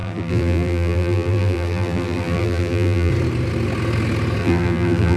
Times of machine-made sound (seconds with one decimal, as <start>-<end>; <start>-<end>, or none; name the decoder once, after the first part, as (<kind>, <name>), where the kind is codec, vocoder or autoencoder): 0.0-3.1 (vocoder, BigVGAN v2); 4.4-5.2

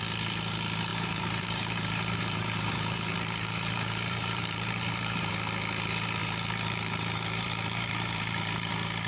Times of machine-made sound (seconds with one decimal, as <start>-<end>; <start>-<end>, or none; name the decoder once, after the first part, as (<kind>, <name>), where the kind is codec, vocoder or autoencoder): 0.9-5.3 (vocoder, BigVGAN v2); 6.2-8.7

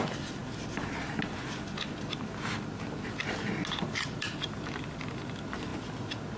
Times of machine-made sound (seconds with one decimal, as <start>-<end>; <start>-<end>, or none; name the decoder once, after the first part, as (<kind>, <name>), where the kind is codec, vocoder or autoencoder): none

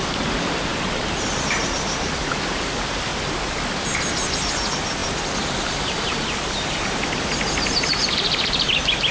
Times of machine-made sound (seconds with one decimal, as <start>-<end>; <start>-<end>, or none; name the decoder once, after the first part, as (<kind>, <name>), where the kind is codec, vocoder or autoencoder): 0.0-3.1 (vocoder, BigVGAN v2); 3.7-5.0; 5.7-9.1